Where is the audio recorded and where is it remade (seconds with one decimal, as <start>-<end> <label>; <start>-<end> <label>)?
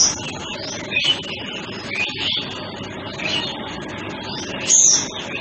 0.0-5.4 recorded